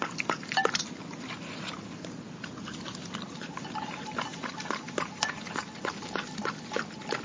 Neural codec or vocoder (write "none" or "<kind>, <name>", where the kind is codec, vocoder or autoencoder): none